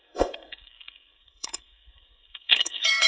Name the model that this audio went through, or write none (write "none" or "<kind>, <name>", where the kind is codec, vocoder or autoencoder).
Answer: codec, SNAC